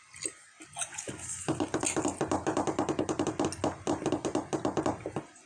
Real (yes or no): yes